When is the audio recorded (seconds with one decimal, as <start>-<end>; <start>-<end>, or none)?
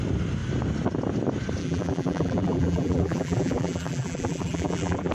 0.0-1.6